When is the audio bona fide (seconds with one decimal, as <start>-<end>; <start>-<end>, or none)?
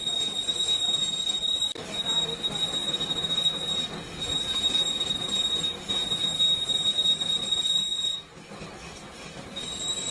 0.0-10.1